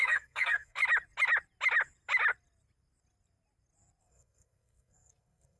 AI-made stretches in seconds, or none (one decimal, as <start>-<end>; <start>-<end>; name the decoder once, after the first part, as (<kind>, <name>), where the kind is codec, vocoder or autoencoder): 0.0-0.8 (codec, SNAC); 4.0-5.6